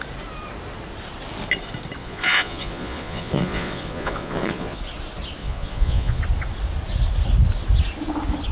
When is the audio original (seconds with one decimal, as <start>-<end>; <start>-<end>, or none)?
0.0-2.0; 4.8-5.4; 6.2-8.5